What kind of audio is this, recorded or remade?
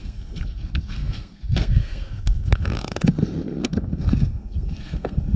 remade